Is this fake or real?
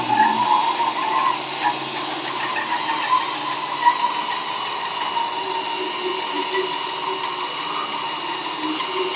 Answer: real